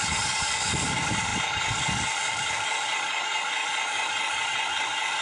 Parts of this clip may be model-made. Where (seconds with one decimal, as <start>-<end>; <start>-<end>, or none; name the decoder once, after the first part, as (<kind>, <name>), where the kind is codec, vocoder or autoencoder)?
0.0-5.2 (codec, DAC)